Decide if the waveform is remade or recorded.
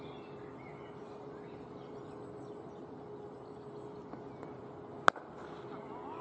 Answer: recorded